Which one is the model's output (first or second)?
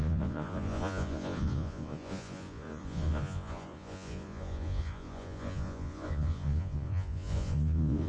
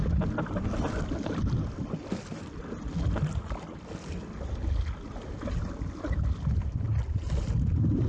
first